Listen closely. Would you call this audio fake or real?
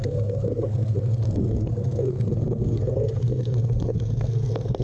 fake